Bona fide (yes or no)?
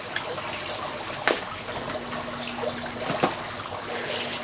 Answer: yes